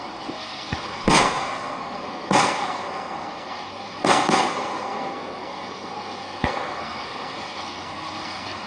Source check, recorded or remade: remade